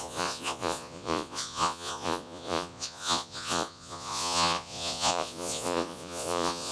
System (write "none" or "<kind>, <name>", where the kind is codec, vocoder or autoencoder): vocoder, Vocos